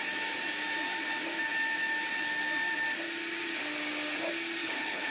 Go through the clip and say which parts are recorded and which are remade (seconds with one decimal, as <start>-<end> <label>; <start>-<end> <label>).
0.0-4.6 recorded; 4.6-5.1 remade